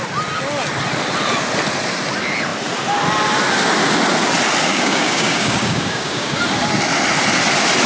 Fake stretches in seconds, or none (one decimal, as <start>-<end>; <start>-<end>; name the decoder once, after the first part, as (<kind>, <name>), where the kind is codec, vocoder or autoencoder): 4.7-6.4 (codec, DAC)